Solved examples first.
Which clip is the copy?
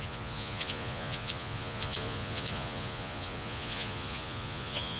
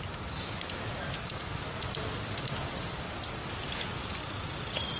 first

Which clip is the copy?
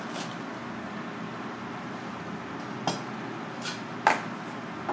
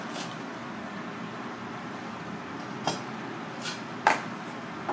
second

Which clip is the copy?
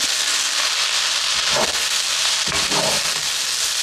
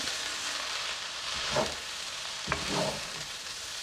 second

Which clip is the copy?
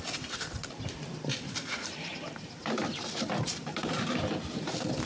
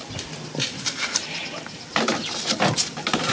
first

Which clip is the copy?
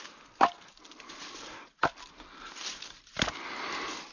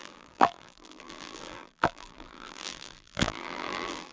second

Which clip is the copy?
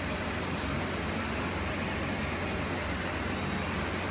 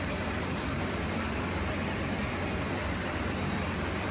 second